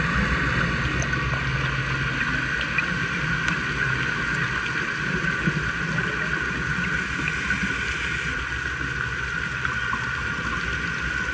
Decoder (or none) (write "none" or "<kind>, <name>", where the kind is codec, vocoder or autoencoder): none